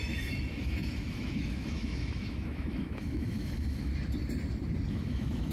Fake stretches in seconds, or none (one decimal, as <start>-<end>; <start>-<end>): 0.0-3.9; 4.9-5.5